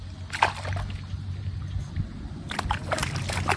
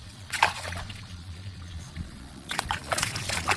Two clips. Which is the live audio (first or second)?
first